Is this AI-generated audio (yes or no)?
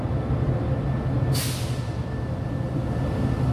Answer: no